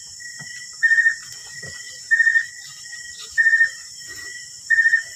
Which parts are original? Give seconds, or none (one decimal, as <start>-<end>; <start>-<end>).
2.3-2.8